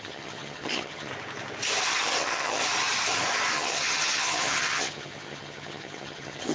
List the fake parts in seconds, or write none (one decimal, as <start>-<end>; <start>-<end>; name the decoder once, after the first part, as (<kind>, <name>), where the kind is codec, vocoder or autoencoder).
0.0-1.1 (vocoder, HiFi-GAN); 1.8-2.6; 3.5-6.5